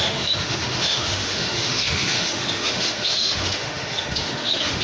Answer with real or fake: fake